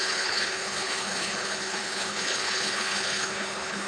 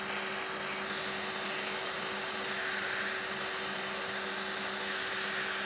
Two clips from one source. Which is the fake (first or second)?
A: first